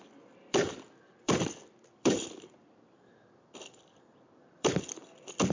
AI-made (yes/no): yes